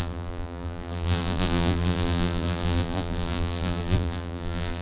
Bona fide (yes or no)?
no